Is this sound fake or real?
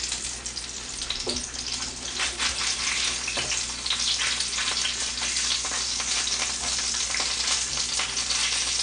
real